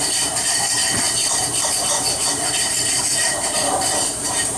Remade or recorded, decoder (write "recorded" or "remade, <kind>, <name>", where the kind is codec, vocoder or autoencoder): remade, vocoder, BigVGAN v2